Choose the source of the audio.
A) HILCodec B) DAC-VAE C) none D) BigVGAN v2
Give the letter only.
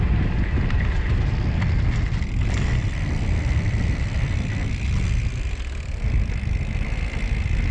C